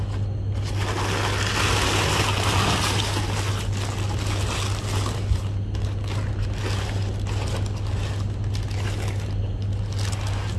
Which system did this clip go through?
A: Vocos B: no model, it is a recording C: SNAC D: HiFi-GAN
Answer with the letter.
B